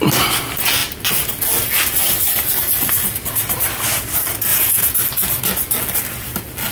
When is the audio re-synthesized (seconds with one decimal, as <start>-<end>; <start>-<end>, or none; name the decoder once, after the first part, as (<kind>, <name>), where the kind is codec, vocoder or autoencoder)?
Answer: 4.5-5.0 (vocoder, Vocos)